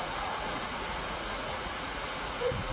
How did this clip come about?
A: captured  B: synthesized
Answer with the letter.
B